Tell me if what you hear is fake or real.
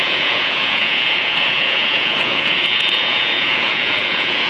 fake